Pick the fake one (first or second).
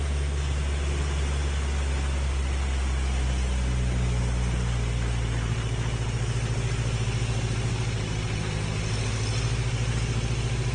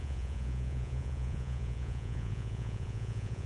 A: second